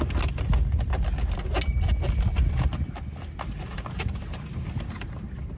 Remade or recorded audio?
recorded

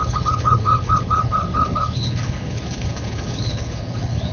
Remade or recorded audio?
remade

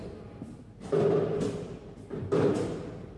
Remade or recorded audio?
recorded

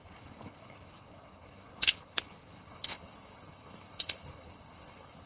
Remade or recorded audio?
remade